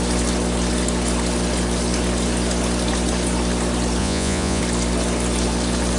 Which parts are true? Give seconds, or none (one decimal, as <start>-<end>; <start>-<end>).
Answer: 0.0-4.0; 4.6-6.0